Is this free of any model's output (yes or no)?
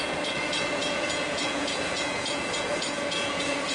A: no